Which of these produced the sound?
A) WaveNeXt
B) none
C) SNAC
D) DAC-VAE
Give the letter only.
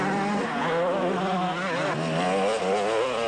B